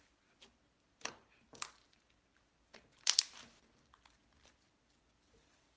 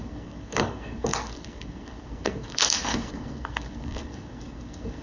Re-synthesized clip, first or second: second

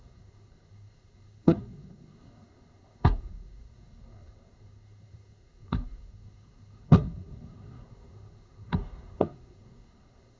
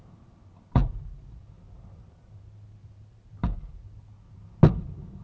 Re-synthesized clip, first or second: first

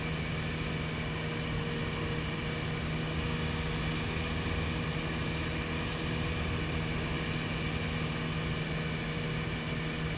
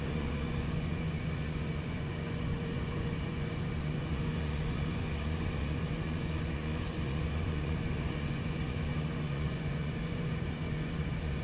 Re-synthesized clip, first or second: second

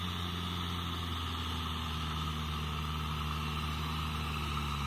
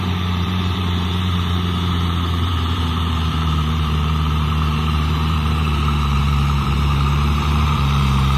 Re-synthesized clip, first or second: second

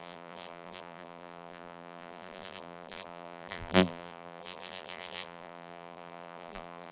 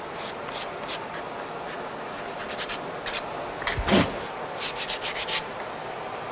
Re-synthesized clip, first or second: first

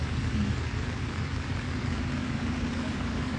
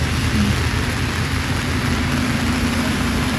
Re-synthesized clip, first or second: first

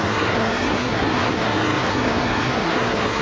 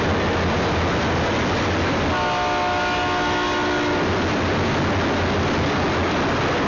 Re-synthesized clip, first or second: first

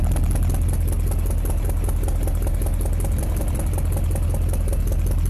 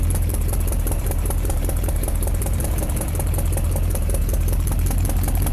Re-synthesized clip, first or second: second